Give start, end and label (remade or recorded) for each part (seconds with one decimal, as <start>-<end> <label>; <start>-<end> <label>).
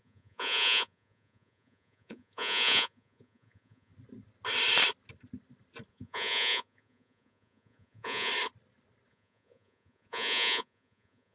0.0-3.9 remade; 3.9-5.9 recorded; 5.9-8.3 remade; 8.3-9.1 recorded; 9.1-11.3 remade